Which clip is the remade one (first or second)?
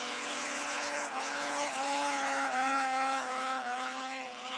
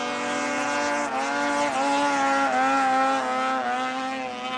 first